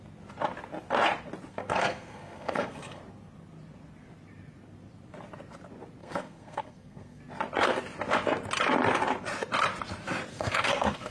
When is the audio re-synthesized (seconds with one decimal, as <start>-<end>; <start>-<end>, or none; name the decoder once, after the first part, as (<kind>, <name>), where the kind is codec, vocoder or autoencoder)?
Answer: 1.5-3.0 (codec, SNAC); 6.0-7.2; 10.3-11.1